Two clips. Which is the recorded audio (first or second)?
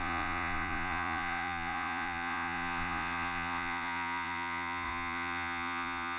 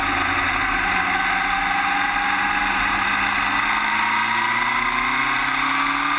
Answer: second